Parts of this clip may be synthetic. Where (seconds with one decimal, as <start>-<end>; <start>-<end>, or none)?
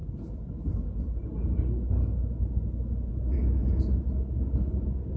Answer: none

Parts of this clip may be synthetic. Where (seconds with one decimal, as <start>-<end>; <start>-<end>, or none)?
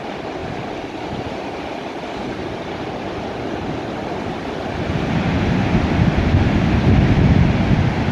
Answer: none